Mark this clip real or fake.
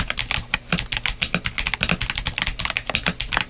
real